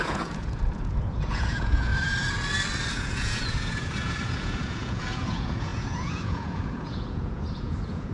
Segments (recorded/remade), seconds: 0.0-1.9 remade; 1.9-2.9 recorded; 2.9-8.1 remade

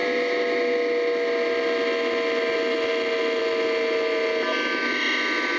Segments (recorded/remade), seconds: 0.0-5.6 recorded